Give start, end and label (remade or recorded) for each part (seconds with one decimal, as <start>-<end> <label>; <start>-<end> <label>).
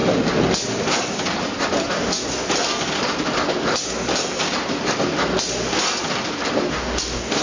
0.0-1.9 recorded; 1.9-2.3 remade; 2.3-6.7 recorded; 6.7-7.4 remade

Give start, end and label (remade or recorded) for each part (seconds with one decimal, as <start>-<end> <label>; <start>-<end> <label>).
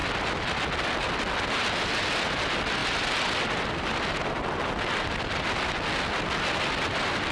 0.0-7.3 recorded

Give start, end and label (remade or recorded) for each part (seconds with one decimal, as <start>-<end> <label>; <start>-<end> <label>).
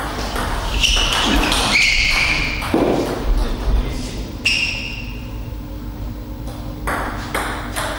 0.0-1.6 recorded; 1.6-2.8 remade; 2.8-3.4 recorded; 3.4-5.3 remade; 5.3-8.0 recorded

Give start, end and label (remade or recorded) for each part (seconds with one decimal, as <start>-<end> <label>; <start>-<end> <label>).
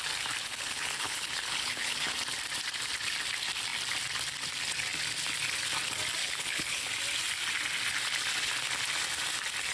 0.0-0.4 recorded; 0.4-2.1 remade; 2.1-6.2 recorded; 6.2-6.9 remade; 6.9-9.7 recorded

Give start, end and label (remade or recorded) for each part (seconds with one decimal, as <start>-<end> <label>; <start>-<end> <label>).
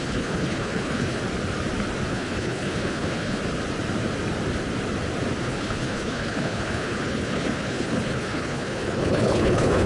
0.0-1.2 remade; 1.2-2.1 recorded; 2.1-3.4 remade; 3.4-5.4 recorded; 5.4-9.9 remade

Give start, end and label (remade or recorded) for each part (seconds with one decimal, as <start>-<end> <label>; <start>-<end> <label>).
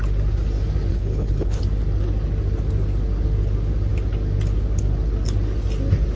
0.0-0.9 recorded; 0.9-1.6 remade; 1.6-6.2 recorded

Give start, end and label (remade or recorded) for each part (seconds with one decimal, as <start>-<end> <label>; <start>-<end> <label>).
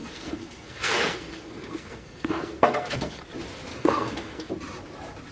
0.0-3.2 remade; 3.2-3.7 recorded; 3.7-4.5 remade; 4.5-5.3 recorded